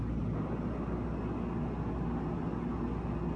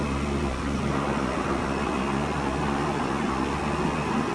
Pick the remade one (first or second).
second